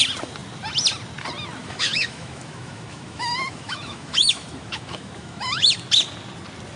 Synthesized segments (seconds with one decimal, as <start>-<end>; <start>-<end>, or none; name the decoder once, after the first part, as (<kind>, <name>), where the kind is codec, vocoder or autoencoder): 1.6-5.7 (autoencoder, DAC-VAE)